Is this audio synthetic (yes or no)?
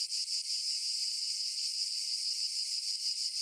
no